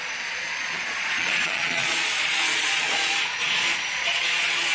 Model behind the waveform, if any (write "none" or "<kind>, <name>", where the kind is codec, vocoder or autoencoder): vocoder, Vocos